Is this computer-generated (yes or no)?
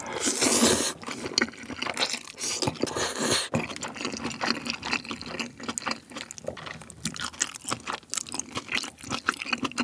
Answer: no